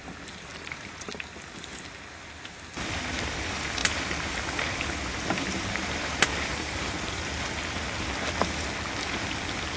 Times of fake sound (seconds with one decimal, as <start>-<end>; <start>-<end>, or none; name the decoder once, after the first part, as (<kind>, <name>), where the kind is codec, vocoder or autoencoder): 0.5-1.1 (vocoder, BigVGAN v2); 3.8-7.6